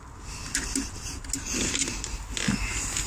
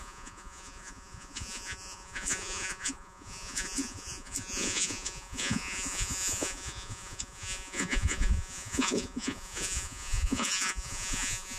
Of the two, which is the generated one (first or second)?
second